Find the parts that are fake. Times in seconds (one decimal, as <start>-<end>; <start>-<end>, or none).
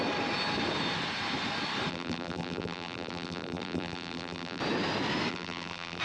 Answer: 1.9-4.6; 5.3-6.0